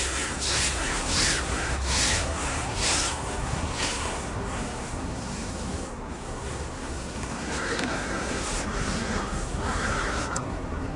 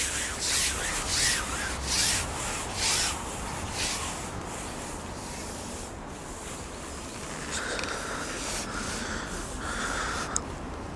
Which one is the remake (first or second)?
first